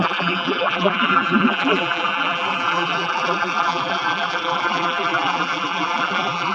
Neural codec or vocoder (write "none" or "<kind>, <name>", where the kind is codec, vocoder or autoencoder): vocoder, BigVGAN v2